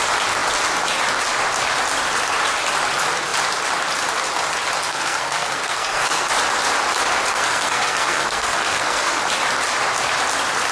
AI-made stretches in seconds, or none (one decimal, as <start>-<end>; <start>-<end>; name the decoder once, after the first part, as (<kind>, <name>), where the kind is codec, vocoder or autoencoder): 4.9-6.3 (codec, SNAC); 7.3-9.2